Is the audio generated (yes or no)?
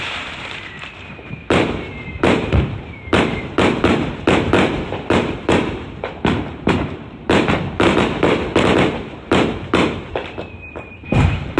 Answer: yes